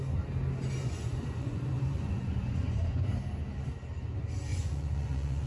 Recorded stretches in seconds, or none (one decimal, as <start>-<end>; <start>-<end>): 0.0-0.8; 3.1-4.5